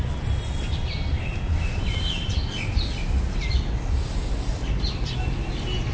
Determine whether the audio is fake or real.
real